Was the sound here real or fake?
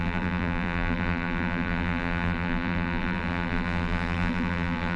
fake